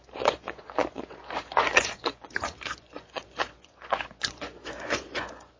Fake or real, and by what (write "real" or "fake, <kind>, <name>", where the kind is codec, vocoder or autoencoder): fake, vocoder, Vocos